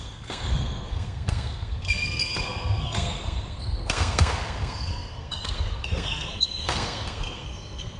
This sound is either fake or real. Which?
fake